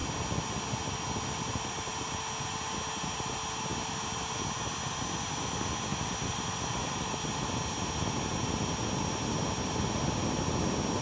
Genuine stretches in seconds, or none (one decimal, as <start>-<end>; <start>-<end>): 0.0-5.9; 6.8-11.0